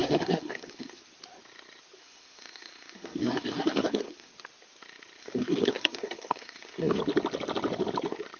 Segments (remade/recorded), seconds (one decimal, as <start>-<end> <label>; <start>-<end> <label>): 0.0-1.0 remade; 1.0-2.0 recorded; 2.0-4.3 remade; 4.3-5.2 recorded; 5.2-7.0 remade; 7.0-8.4 recorded